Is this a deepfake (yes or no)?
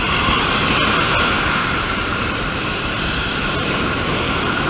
yes